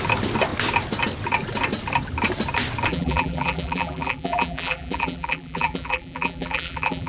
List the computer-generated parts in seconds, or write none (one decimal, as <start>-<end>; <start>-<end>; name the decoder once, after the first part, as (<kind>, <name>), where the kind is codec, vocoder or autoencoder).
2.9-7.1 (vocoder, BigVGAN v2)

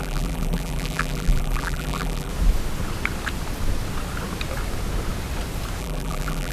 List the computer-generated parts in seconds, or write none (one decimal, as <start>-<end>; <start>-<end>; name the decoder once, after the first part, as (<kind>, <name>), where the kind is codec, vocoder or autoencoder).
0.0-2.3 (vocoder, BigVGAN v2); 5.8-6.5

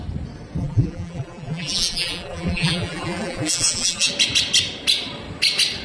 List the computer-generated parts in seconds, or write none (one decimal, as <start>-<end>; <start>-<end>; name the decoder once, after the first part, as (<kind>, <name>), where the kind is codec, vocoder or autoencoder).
0.6-4.1 (vocoder, BigVGAN v2)

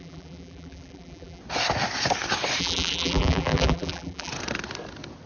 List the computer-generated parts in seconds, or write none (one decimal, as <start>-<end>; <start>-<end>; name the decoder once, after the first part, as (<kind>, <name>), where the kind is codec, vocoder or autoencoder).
0.0-1.4 (vocoder, BigVGAN v2); 2.6-4.3

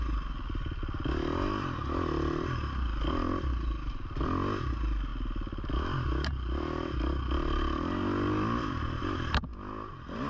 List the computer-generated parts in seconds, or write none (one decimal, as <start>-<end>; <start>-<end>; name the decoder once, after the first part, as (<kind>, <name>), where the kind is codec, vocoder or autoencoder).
none